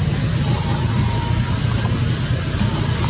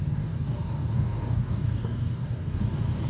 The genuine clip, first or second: first